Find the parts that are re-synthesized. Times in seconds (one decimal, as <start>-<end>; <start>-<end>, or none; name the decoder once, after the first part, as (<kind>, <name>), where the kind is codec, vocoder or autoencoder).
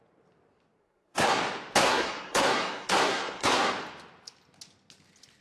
0.8-1.4 (codec, SNAC); 1.8-3.7